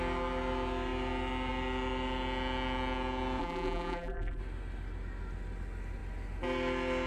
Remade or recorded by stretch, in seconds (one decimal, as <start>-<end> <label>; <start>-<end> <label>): 0.0-3.4 recorded; 3.4-4.4 remade; 4.4-7.1 recorded